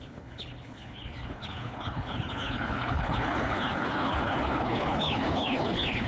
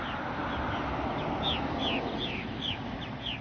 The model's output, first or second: first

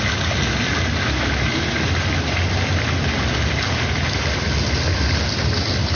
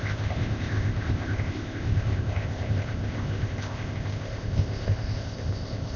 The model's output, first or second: second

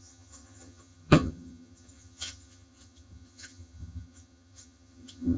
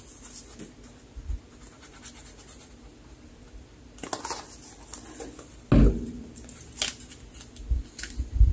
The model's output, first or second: first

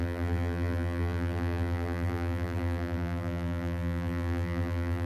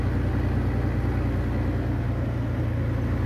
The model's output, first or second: first